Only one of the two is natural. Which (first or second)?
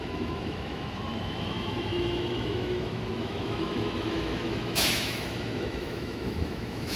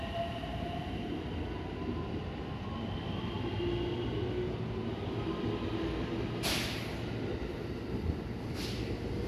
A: second